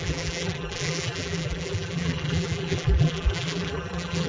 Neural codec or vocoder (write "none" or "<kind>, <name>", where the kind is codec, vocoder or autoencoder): vocoder, BigVGAN v2